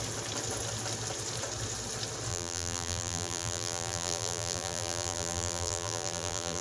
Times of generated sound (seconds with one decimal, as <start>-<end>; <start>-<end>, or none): 2.3-6.6